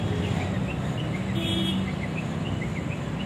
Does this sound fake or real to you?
real